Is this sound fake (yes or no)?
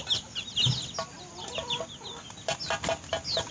no